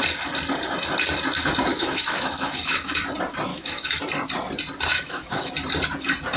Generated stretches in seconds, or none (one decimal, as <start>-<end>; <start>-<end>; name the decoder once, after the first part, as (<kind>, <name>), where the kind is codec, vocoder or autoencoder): 1.7-2.9 (autoencoder, DAC-VAE); 3.5-4.0; 4.9-5.5